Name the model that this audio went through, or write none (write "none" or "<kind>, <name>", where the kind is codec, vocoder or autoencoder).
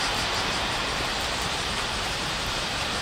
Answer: vocoder, BigVGAN v2